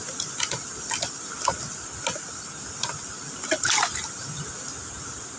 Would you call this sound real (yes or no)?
yes